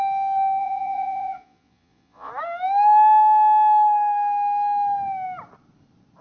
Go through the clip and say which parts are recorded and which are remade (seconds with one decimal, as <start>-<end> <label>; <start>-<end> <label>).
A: 0.0-0.6 recorded; 0.6-2.3 remade; 2.3-6.2 recorded